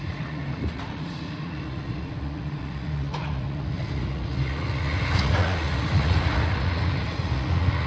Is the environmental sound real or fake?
fake